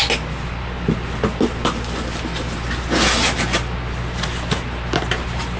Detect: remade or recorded recorded